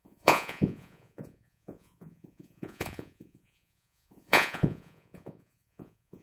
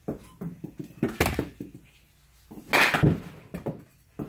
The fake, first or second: first